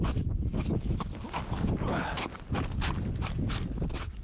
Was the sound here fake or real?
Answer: real